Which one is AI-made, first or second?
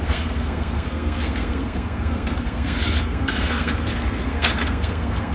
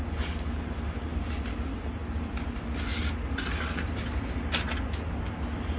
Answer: first